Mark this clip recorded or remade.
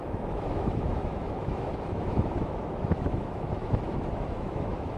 remade